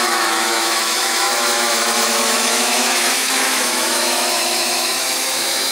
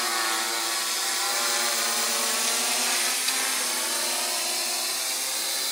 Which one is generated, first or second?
first